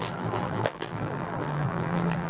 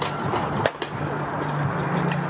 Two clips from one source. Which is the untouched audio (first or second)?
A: second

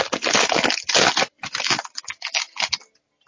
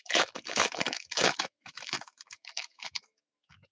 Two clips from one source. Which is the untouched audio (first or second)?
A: first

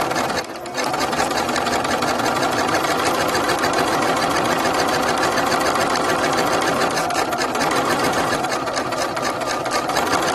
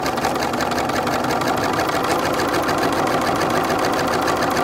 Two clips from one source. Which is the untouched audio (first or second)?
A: second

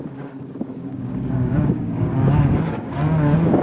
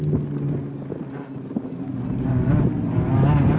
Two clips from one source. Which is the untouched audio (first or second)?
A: second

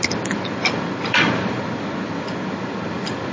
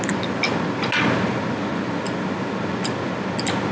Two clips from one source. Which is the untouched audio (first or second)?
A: second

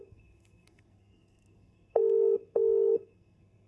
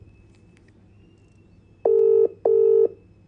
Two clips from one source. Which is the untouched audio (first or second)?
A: second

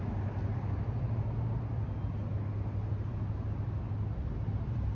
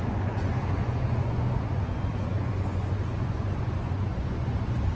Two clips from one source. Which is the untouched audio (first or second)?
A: first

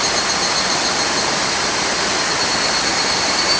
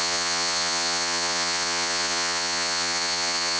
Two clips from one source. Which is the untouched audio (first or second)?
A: first